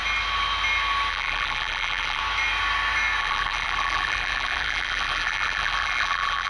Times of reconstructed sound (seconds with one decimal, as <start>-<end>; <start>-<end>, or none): 1.1-2.2; 3.2-6.5